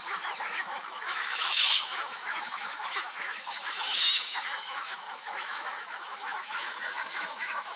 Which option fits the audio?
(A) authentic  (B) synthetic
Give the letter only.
B